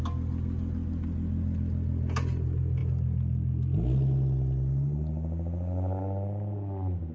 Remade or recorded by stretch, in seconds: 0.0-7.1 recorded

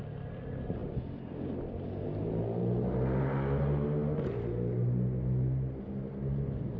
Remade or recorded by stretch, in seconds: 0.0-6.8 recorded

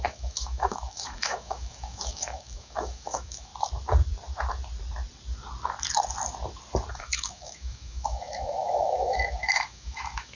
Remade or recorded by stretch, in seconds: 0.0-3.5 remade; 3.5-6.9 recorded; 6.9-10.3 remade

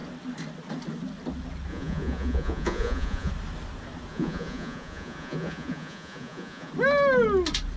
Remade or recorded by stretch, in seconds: 0.0-1.7 recorded; 1.7-3.3 remade; 3.3-4.1 recorded; 4.1-6.7 remade; 6.7-7.8 recorded